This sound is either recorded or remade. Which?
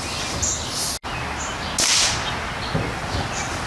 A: recorded